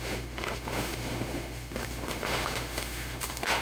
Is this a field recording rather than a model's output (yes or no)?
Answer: no